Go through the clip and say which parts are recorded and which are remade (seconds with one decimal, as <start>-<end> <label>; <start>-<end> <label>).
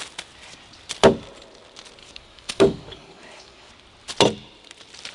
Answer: 0.0-2.0 recorded; 2.0-3.7 remade; 3.7-5.1 recorded